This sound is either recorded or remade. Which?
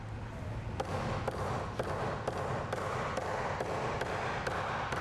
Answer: recorded